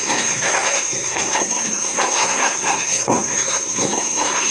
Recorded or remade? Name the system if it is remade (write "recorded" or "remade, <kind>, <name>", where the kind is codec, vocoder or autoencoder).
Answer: remade, codec, SNAC